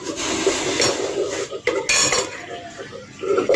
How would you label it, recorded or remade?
recorded